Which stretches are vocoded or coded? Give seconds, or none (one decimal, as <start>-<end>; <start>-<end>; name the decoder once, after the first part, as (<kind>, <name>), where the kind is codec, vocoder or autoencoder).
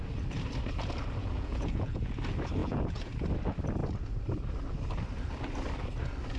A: 1.2-2.1 (vocoder, Vocos); 2.6-3.1